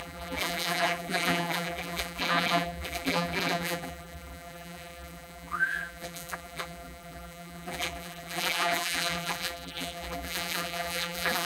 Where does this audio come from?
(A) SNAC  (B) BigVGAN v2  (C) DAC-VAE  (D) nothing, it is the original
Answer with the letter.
B